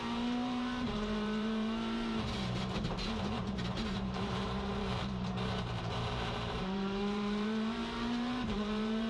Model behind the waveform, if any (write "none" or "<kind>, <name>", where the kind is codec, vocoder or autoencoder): vocoder, BigVGAN v2